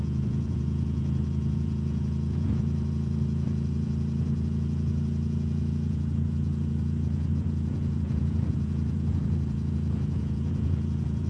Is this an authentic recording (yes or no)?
no